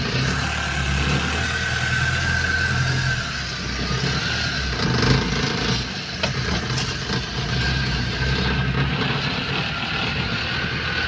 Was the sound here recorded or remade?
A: recorded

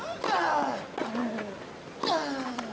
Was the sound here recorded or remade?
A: recorded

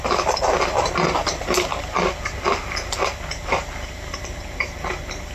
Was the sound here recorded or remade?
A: recorded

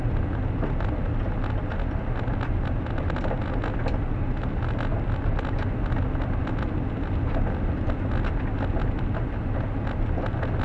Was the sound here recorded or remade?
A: recorded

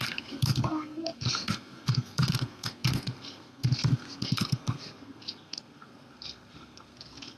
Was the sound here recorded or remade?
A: remade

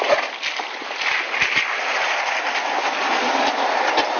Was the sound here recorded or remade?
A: recorded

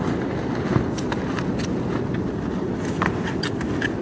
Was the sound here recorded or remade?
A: recorded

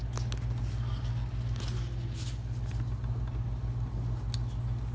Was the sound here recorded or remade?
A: recorded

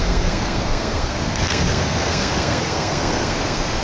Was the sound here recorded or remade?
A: remade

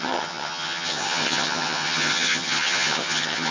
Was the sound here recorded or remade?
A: remade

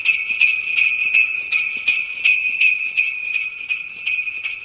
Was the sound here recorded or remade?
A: recorded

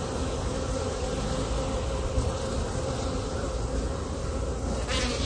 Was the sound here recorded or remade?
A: recorded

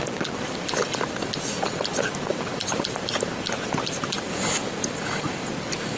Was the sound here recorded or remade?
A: recorded